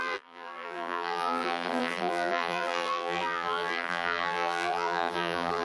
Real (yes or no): no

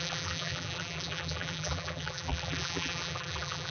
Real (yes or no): no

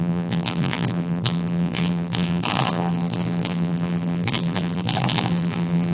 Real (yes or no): no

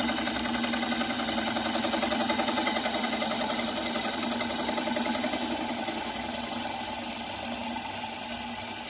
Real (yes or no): yes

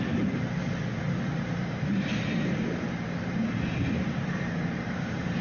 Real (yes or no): no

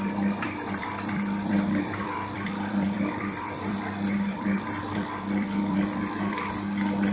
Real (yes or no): no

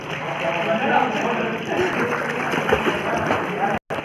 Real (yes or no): yes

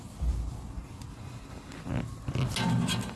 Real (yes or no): yes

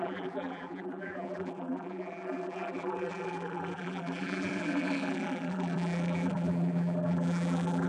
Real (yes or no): no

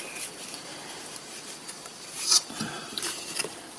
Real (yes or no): no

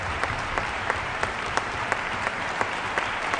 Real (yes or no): no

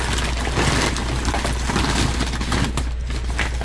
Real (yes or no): yes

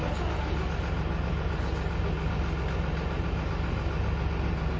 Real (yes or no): yes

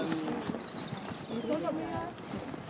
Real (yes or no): yes